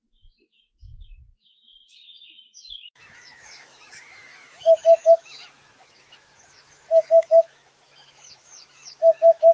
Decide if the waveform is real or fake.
fake